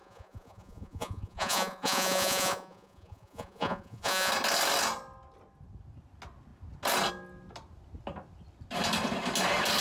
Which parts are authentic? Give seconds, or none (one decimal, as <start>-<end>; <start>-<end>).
4.3-9.8